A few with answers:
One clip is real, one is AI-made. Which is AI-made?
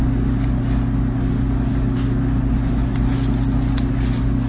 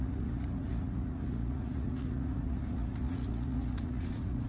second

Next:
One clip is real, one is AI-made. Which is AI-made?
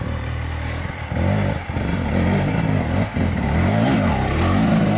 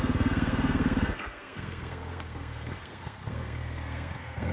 second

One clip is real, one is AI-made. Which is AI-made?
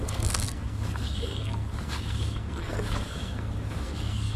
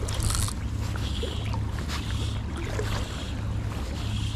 first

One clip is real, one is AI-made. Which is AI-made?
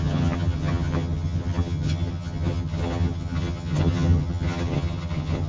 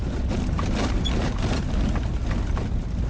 first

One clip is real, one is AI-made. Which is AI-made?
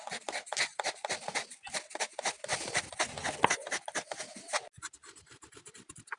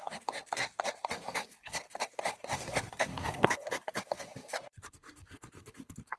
second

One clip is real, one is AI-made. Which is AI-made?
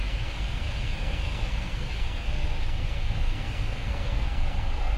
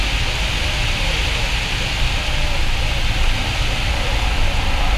first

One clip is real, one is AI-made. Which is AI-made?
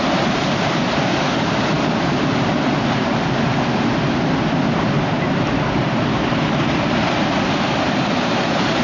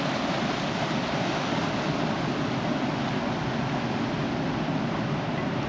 first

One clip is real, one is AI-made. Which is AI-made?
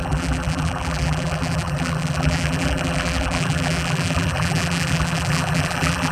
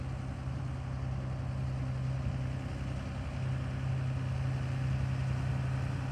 first